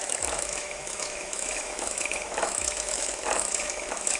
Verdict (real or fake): fake